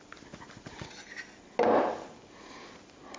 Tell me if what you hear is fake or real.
real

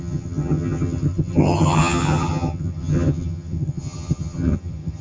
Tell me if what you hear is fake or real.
fake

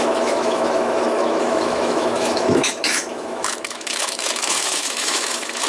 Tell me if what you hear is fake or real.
fake